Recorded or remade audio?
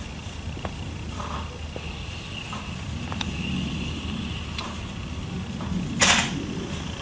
remade